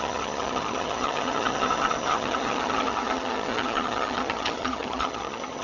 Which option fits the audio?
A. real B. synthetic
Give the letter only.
B